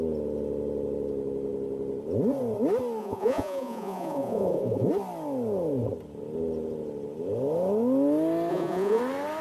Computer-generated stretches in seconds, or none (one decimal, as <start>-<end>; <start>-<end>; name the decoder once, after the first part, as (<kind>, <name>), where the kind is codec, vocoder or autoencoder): 3.0-4.9 (vocoder, Vocos); 8.5-9.0